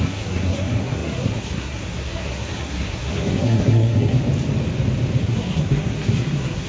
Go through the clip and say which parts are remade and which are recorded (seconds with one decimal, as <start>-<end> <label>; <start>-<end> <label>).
0.0-4.2 remade; 4.2-5.2 recorded; 5.2-6.7 remade